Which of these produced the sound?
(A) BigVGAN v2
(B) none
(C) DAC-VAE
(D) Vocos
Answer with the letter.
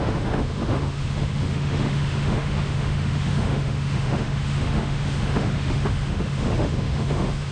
C